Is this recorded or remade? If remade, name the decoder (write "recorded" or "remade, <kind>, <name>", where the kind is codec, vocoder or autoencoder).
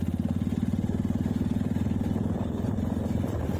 recorded